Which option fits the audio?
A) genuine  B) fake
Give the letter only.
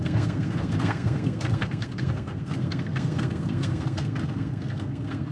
B